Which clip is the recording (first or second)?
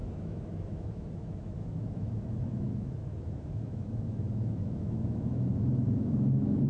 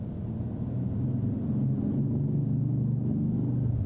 second